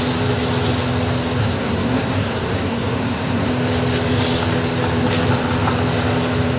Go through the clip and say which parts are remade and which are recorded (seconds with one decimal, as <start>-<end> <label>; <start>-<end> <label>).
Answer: 0.0-1.4 recorded; 1.4-3.5 remade; 3.5-6.6 recorded